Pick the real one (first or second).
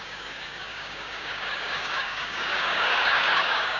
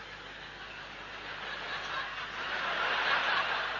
second